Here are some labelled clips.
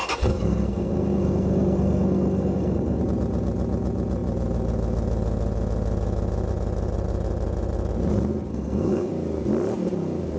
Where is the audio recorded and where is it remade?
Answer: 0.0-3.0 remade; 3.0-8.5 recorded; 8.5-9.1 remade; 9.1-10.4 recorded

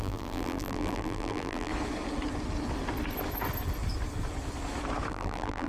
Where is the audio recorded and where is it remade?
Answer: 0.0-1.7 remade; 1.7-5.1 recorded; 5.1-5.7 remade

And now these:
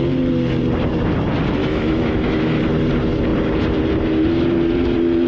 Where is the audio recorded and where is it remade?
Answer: 0.0-1.6 recorded; 1.6-2.6 remade; 2.6-5.3 recorded